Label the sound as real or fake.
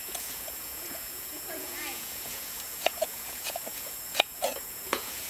fake